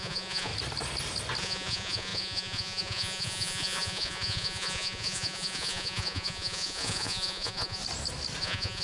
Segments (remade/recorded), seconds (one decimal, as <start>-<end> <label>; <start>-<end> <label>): 0.0-0.5 remade; 0.5-1.4 recorded; 1.4-7.8 remade; 7.8-8.4 recorded; 8.4-8.8 remade